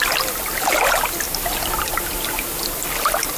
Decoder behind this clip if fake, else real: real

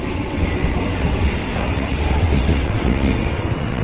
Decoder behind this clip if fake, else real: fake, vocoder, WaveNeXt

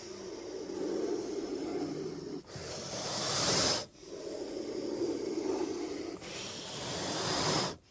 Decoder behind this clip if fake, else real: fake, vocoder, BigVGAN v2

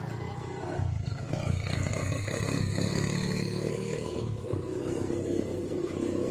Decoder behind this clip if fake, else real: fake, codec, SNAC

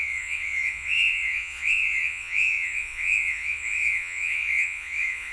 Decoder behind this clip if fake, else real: fake, vocoder, Vocos